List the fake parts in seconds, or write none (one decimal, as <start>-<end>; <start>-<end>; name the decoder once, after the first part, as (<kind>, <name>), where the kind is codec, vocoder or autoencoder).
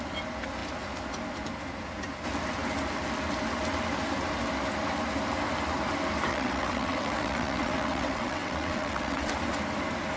6.3-9.3 (vocoder, WaveNeXt)